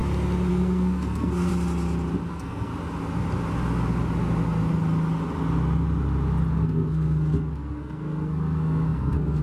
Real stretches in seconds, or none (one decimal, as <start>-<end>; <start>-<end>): 0.0-0.5; 1.5-2.3; 2.7-6.5